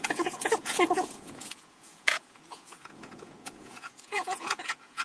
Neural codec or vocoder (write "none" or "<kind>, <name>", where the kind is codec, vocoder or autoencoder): vocoder, Vocos